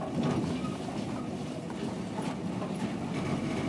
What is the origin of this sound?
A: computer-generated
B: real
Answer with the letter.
B